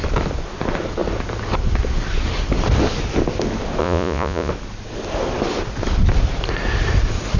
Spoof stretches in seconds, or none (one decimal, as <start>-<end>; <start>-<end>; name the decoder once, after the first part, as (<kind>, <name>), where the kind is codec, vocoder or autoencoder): 3.8-4.5 (vocoder, Vocos)